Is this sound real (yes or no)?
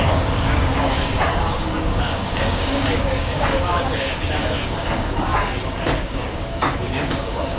no